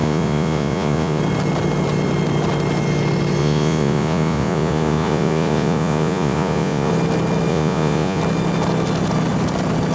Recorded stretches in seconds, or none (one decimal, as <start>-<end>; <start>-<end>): 1.2-3.4; 6.9-7.5; 8.2-9.9

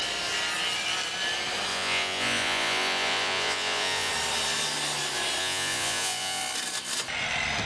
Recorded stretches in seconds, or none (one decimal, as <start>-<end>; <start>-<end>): 0.0-1.7; 4.1-5.4; 6.4-7.7

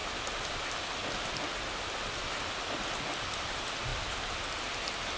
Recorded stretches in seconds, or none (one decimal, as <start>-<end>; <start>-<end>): 0.0-5.2